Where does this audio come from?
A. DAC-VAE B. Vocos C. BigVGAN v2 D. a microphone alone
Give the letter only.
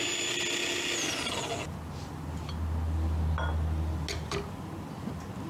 D